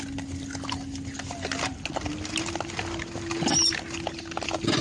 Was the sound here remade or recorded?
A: recorded